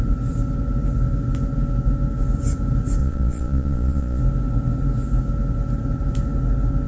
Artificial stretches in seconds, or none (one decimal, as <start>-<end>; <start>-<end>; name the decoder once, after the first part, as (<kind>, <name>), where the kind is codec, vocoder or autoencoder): 3.0-4.2 (vocoder, Vocos)